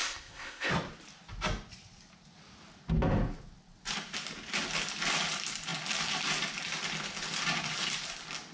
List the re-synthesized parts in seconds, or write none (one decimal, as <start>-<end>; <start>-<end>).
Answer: 0.0-0.7